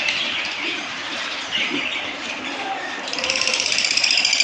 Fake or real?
fake